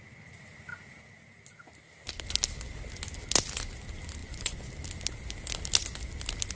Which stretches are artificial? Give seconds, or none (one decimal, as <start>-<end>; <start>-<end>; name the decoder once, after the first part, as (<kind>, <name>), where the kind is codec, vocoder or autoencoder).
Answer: 4.2-4.7 (vocoder, Vocos)